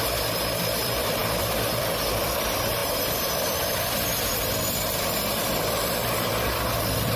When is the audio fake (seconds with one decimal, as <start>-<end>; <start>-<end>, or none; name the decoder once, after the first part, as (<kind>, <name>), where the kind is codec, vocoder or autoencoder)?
0.0-7.2 (vocoder, BigVGAN v2)